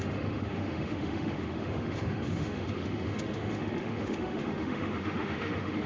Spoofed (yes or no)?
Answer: yes